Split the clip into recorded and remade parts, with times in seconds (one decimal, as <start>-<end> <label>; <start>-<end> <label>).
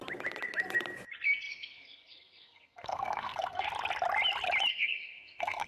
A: 0.0-1.5 recorded; 1.5-3.7 remade; 3.7-4.7 recorded; 4.7-5.7 remade